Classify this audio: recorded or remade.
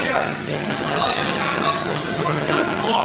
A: remade